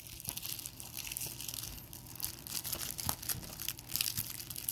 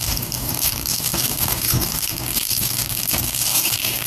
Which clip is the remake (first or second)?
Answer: second